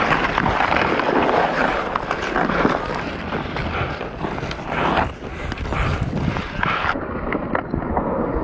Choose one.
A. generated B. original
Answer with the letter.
B